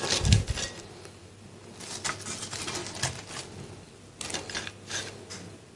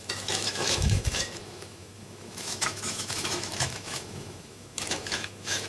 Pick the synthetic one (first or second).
second